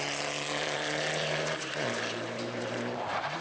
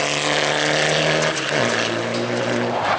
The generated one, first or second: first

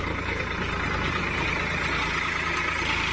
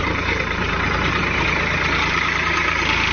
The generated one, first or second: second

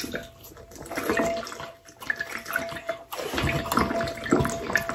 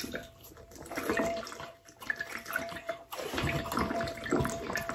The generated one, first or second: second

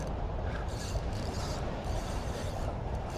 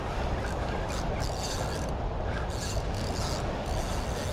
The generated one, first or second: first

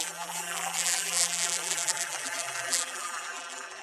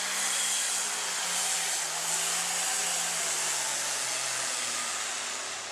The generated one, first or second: first